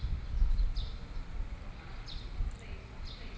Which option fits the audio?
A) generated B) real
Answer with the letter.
B